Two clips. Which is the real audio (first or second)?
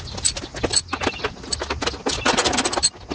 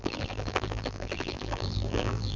first